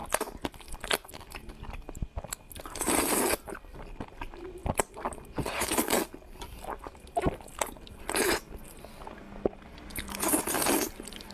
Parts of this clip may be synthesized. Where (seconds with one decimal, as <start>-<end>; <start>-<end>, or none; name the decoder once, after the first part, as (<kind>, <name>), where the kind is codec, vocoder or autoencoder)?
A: none